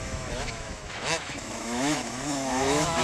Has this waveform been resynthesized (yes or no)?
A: yes